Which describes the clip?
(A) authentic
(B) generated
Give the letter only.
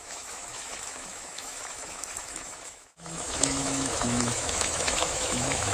B